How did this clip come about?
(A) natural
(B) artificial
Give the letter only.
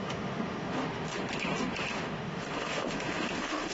B